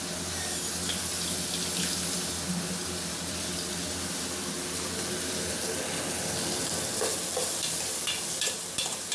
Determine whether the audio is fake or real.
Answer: real